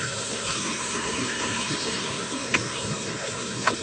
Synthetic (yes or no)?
yes